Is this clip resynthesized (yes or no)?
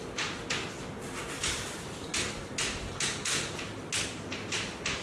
no